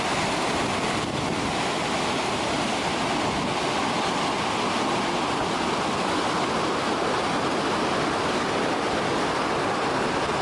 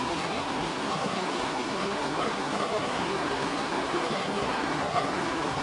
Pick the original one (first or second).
first